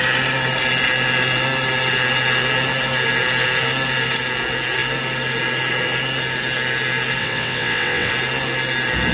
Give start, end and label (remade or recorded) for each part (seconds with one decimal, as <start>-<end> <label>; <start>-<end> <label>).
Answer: 0.0-7.2 recorded; 7.2-8.1 remade; 8.1-9.1 recorded